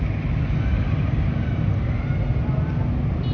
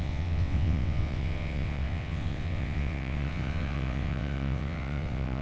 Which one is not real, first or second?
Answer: second